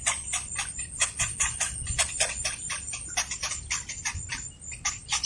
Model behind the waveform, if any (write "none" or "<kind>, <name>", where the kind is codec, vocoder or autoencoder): none